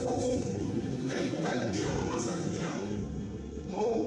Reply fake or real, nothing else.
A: fake